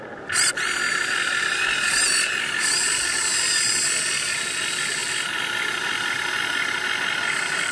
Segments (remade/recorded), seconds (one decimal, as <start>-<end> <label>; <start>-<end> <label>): 0.0-5.0 recorded; 5.0-6.3 remade; 6.3-7.7 recorded